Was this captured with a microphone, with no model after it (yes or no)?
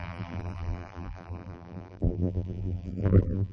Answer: no